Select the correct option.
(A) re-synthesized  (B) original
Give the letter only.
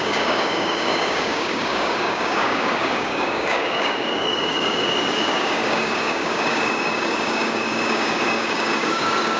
A